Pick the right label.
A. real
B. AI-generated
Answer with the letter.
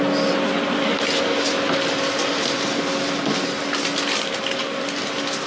A